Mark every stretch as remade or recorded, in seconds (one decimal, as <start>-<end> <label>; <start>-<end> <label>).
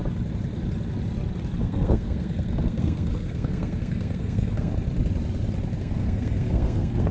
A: 0.0-1.6 recorded; 1.6-4.7 remade; 4.7-5.8 recorded; 5.8-7.1 remade